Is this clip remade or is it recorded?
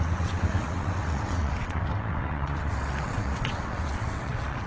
remade